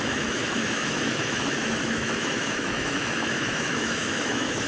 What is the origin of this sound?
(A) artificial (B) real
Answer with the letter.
A